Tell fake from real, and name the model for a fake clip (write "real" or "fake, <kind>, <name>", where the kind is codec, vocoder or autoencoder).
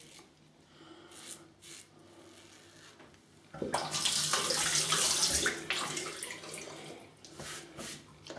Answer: real